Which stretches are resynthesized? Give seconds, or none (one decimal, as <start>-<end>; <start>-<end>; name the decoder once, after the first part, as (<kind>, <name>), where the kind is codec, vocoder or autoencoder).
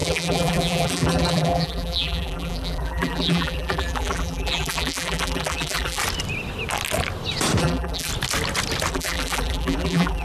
0.0-6.0 (vocoder, BigVGAN v2); 7.6-8.1; 8.9-10.2